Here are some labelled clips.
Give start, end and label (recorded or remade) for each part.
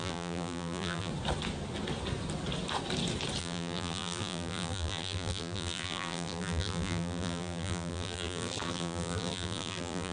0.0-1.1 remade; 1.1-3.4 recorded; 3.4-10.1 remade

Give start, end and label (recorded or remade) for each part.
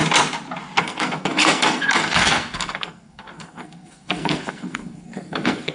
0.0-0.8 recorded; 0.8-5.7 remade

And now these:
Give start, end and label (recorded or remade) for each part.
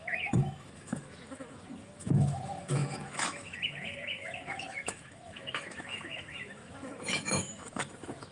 0.0-8.3 remade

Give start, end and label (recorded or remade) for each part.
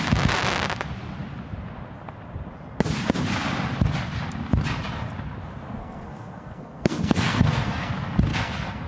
0.0-5.8 recorded; 5.8-7.9 remade; 7.9-8.3 recorded; 8.3-8.9 remade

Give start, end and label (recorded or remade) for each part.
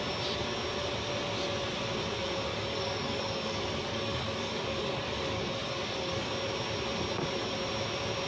0.0-2.5 recorded; 2.5-6.3 remade; 6.3-8.3 recorded